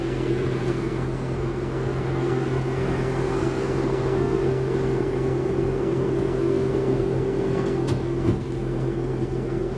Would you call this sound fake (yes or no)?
yes